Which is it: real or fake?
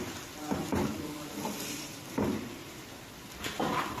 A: real